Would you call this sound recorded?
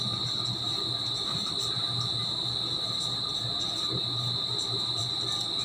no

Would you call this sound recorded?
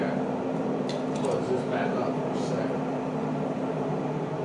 no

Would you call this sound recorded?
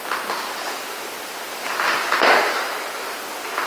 no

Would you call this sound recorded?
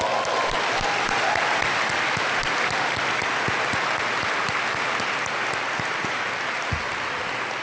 yes